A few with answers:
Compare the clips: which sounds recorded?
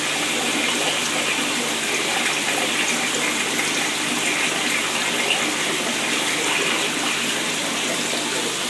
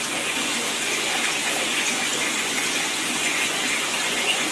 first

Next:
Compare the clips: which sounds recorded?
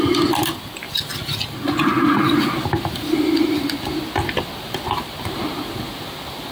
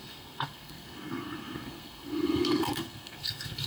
first